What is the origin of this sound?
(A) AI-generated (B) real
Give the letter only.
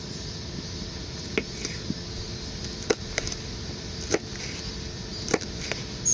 B